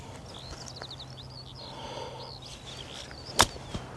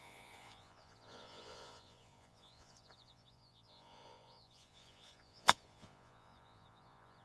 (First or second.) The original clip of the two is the first